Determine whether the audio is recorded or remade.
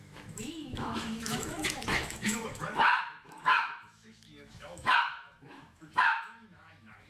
remade